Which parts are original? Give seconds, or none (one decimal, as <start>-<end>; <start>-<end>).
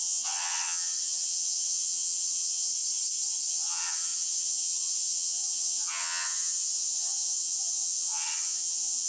2.7-3.5